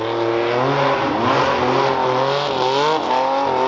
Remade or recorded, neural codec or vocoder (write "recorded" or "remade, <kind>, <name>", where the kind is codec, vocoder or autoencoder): recorded